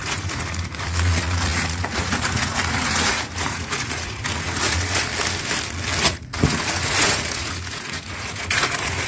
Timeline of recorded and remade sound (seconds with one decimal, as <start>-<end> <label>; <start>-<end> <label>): 0.0-5.1 remade; 5.1-6.0 recorded; 6.0-9.1 remade